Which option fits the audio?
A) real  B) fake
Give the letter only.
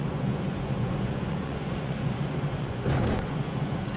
B